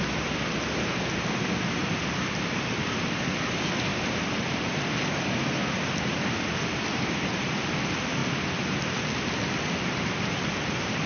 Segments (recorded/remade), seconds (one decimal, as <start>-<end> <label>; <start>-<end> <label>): 0.0-11.1 recorded